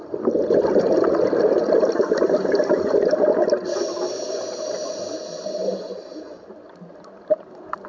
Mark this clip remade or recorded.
recorded